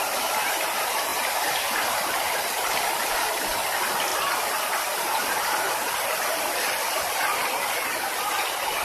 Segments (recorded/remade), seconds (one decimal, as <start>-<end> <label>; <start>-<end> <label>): 0.0-1.1 remade; 1.1-1.9 recorded; 1.9-7.4 remade; 7.4-8.8 recorded